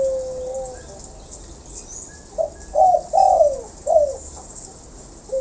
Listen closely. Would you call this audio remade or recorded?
recorded